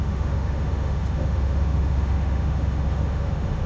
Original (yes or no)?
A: no